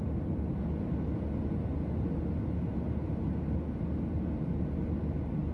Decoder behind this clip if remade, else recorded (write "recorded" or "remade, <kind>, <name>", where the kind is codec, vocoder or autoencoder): recorded